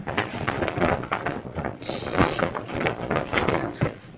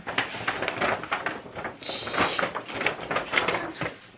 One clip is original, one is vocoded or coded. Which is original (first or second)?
second